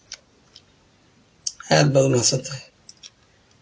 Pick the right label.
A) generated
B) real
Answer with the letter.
B